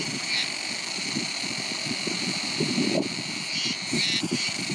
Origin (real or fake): fake